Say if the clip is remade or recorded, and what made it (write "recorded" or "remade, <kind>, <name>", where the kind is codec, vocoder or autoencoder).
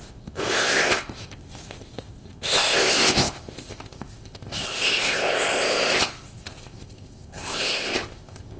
remade, codec, ZipCodec